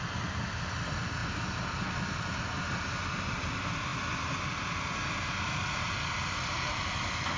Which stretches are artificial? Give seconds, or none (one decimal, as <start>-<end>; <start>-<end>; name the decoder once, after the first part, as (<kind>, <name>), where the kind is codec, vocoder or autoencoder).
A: none